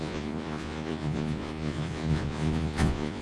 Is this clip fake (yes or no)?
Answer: yes